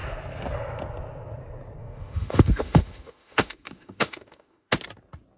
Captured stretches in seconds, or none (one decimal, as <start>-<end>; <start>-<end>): 0.0-1.8; 4.7-5.4